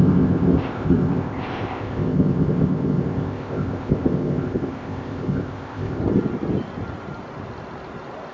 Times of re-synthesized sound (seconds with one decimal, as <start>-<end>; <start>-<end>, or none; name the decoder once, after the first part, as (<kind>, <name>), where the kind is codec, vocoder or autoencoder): 0.0-6.0 (codec, ZipCodec)